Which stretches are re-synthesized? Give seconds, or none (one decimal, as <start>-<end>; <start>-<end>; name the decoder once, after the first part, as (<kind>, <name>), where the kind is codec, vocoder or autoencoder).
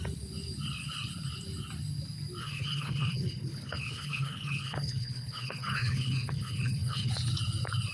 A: 2.4-7.1 (codec, HILCodec)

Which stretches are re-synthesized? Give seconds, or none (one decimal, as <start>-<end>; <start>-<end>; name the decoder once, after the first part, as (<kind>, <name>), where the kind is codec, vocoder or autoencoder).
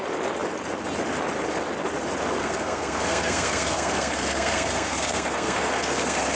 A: 2.4-6.4 (codec, SNAC)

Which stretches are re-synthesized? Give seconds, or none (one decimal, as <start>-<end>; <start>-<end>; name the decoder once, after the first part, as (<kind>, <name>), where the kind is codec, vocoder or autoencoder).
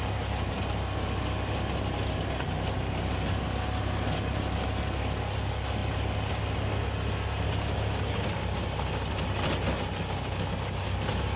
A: none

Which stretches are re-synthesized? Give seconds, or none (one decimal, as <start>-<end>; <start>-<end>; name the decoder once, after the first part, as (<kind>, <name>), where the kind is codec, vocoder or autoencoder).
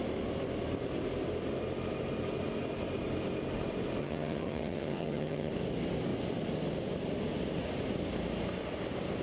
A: 4.0-5.5 (vocoder, HiFi-GAN)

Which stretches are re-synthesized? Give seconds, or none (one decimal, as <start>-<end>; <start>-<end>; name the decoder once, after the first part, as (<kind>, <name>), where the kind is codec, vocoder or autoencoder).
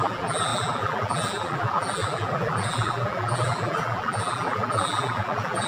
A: 0.0-5.7 (vocoder, BigVGAN v2)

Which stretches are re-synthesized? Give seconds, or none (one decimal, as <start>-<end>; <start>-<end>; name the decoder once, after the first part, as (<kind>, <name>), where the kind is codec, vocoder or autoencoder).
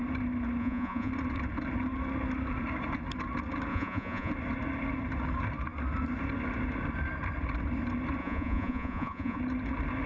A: 0.6-1.1 (vocoder, Vocos); 3.7-4.3; 8.2-9.4